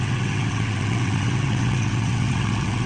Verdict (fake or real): fake